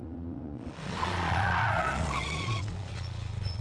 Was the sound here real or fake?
fake